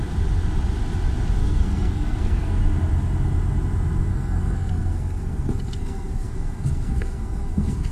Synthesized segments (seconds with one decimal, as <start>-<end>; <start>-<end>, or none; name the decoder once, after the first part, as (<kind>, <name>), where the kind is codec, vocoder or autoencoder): 1.4-2.6 (codec, SNAC); 4.1-7.9